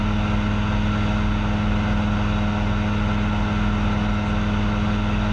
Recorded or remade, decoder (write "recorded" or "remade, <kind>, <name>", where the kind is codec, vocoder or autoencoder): recorded